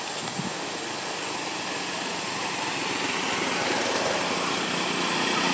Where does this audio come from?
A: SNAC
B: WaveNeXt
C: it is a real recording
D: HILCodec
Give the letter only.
C